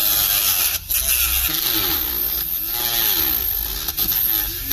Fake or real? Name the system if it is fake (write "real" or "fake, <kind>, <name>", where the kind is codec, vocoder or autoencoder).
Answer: real